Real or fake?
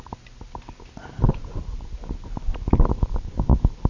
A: real